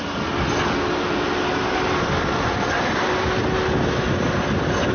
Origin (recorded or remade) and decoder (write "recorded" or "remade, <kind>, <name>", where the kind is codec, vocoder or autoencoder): recorded